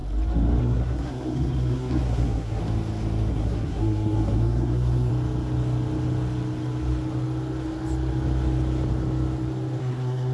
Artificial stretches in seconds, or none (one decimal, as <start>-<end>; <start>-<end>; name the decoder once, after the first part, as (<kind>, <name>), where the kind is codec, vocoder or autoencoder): 0.6-2.6 (codec, SNAC); 3.3-5.1; 9.8-10.3